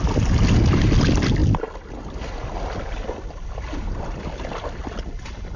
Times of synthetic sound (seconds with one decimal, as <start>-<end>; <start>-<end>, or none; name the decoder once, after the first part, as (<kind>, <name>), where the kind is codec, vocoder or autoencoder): none